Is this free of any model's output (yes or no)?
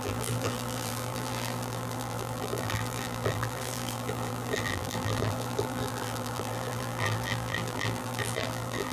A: no